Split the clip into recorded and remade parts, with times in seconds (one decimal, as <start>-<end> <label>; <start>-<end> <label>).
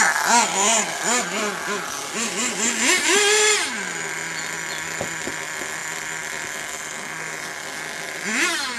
0.0-5.8 recorded; 5.8-6.5 remade; 6.5-8.8 recorded